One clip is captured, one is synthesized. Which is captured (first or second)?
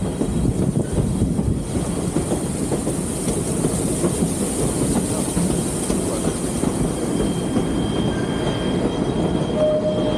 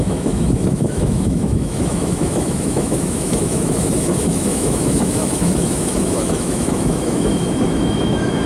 first